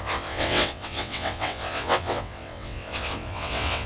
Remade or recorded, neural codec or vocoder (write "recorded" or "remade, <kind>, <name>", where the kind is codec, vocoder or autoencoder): remade, vocoder, WaveNeXt